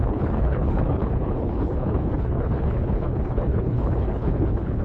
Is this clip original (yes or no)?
no